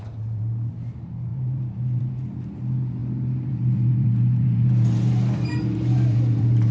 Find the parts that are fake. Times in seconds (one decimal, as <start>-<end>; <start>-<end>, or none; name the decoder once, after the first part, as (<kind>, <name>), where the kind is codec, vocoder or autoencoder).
0.0-6.7 (vocoder, BigVGAN v2)